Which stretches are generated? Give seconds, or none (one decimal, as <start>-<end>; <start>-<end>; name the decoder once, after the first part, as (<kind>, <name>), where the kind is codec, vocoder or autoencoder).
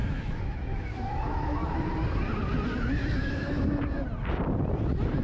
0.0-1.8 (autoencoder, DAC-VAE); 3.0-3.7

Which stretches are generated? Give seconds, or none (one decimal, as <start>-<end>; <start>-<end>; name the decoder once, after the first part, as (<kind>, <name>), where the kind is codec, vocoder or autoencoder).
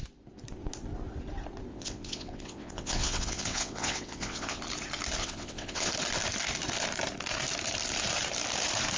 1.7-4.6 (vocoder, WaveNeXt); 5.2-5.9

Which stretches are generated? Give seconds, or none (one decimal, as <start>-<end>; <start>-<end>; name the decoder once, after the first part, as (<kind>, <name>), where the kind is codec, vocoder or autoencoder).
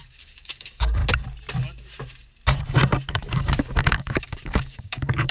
0.0-1.0 (codec, DAC); 3.1-5.3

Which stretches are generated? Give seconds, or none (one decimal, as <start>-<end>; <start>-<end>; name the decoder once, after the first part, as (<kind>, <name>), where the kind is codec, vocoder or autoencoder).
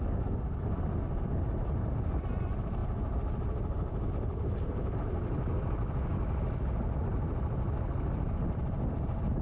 none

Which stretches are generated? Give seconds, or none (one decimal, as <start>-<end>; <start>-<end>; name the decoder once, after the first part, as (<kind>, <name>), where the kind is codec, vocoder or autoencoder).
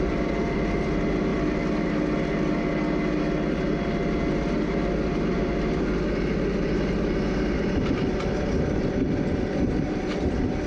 none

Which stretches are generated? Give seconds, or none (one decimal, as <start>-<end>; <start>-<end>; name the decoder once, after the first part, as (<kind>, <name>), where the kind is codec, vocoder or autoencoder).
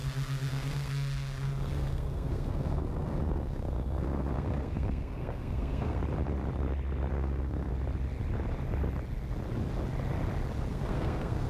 0.0-6.0 (codec, SNAC); 7.1-7.7; 10.7-11.5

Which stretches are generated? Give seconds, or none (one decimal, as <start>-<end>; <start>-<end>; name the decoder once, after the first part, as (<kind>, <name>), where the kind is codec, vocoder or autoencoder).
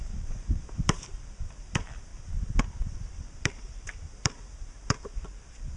0.0-2.1 (vocoder, BigVGAN v2); 3.1-5.8